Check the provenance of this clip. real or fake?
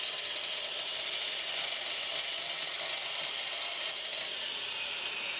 real